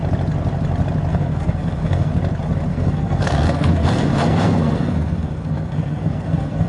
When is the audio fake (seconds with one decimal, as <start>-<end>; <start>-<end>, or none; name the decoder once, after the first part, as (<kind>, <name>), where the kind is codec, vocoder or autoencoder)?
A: 1.1-2.1 (codec, SNAC); 2.7-6.7